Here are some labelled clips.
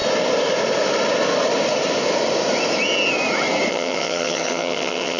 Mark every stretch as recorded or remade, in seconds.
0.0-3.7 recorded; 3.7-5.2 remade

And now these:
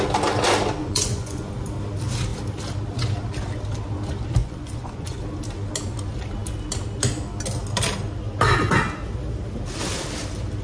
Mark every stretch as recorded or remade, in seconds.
0.0-0.8 recorded; 0.8-1.5 remade; 1.5-4.4 recorded; 4.4-5.2 remade; 5.2-10.6 recorded

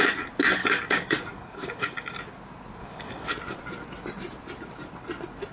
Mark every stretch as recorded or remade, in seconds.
0.0-0.6 recorded; 0.6-2.2 remade; 2.2-2.8 recorded; 2.8-3.3 remade; 3.3-5.5 recorded

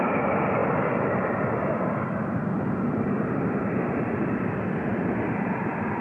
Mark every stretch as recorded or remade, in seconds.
0.0-4.9 remade; 4.9-5.6 recorded; 5.6-6.0 remade

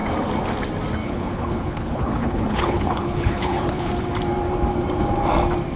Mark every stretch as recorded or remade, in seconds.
0.0-1.0 recorded; 1.0-3.9 remade; 3.9-5.8 recorded

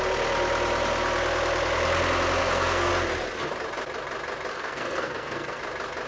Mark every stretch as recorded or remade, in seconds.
0.0-2.4 recorded; 2.4-2.9 remade; 2.9-4.5 recorded; 4.5-5.6 remade; 5.6-6.1 recorded